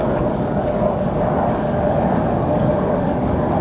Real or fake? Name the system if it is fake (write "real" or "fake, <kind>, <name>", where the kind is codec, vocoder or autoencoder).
fake, codec, DAC